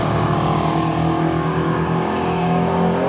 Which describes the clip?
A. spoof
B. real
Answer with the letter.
A